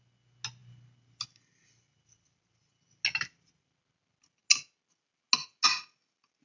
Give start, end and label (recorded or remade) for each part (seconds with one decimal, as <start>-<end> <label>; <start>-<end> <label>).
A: 0.0-6.4 recorded